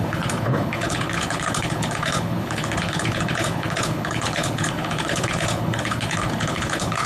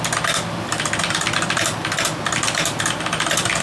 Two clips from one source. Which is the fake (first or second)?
first